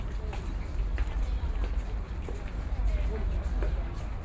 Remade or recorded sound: recorded